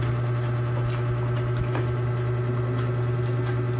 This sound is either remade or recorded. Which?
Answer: recorded